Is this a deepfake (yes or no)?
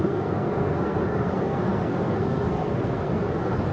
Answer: yes